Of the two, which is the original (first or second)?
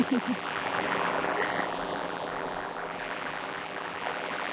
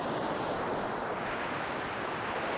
second